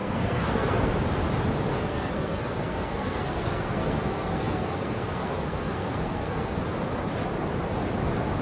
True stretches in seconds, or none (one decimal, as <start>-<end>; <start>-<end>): 0.9-1.7; 6.6-8.4